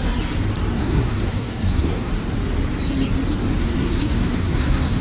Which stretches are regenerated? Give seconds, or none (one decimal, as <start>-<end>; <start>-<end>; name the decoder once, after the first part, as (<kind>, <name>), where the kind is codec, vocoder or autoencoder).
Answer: 0.7-2.1 (codec, SNAC); 3.6-5.0

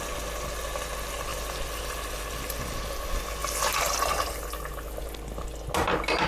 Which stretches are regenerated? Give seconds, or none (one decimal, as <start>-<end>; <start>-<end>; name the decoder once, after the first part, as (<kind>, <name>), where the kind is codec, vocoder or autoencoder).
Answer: none

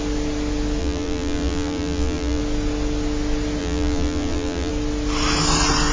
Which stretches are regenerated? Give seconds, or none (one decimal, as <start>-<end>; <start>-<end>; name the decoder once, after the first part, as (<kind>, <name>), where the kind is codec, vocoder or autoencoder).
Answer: 0.8-2.4 (vocoder, BigVGAN v2); 3.6-4.7

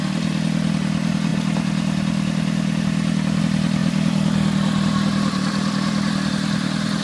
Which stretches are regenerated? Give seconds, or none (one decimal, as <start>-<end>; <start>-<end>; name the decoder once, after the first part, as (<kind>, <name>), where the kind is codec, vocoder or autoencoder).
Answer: none

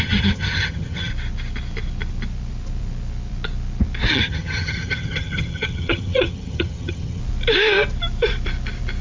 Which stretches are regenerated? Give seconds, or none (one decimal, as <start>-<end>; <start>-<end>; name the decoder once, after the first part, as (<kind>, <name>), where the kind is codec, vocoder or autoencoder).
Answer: 0.0-1.1 (vocoder, HiFi-GAN); 4.1-7.2

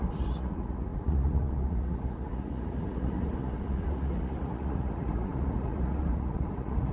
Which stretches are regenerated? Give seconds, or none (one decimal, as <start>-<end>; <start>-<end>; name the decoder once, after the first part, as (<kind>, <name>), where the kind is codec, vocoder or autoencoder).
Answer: 0.0-6.9 (vocoder, Vocos)

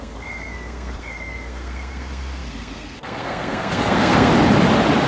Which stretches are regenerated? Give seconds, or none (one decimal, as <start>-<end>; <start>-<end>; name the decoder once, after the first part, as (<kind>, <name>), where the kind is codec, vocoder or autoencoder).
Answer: 0.0-4.3 (codec, SNAC)

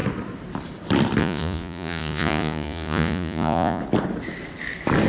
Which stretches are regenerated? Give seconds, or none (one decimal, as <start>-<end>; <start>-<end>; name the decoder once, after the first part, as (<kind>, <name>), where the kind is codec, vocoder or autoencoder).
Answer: 1.2-3.8 (vocoder, Vocos)